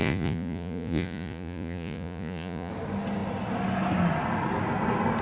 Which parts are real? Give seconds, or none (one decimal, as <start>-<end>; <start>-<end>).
2.7-5.2